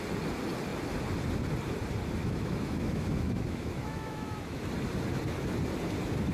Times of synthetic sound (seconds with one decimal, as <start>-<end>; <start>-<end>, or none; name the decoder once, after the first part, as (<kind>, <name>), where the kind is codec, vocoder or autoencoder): 2.2-4.6 (autoencoder, DAC-VAE)